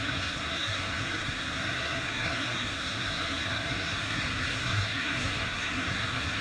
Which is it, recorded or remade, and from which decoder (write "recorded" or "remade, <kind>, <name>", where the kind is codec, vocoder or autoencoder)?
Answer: remade, codec, SNAC